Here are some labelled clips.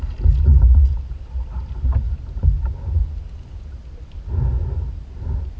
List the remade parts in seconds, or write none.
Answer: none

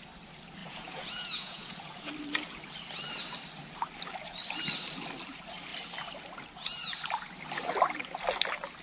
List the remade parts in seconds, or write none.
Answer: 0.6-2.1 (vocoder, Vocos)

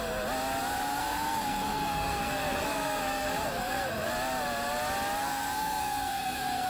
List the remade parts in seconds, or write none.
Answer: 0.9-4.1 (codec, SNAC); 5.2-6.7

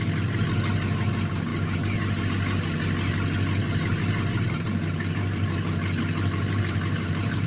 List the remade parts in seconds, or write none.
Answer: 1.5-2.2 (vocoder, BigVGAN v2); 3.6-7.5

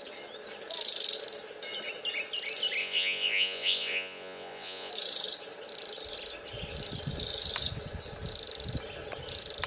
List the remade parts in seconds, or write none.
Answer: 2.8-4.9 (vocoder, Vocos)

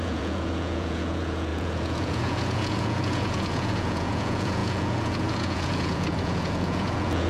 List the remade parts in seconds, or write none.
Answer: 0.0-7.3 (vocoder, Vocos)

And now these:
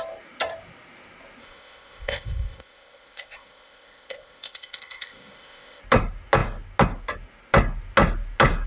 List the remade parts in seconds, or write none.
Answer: 1.4-5.8 (codec, ZipCodec)

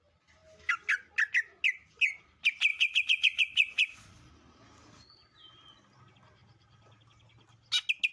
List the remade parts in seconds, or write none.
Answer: 2.7-4.3 (vocoder, Vocos)